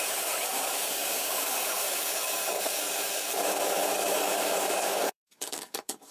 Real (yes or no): no